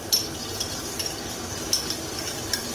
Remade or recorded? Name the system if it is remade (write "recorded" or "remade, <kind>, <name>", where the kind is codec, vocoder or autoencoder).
remade, vocoder, BigVGAN v2